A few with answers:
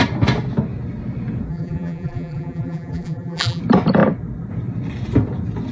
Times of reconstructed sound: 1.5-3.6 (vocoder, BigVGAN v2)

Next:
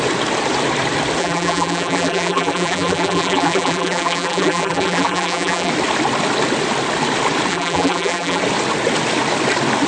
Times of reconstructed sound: 1.2-5.7 (vocoder, BigVGAN v2); 7.5-8.4

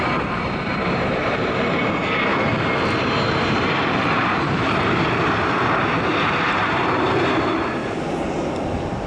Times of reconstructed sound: 0.0-2.3 (vocoder, BigVGAN v2); 3.0-7.8

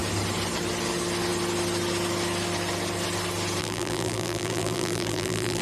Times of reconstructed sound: 3.6-5.6 (vocoder, BigVGAN v2)

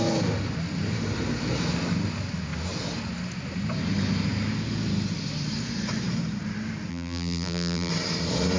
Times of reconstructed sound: 6.9-7.9 (vocoder, BigVGAN v2)